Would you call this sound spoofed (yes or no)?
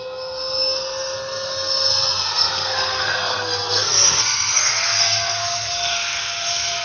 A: yes